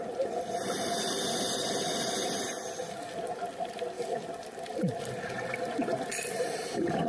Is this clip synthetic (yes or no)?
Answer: yes